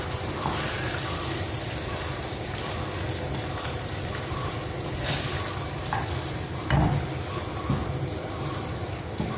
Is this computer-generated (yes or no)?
no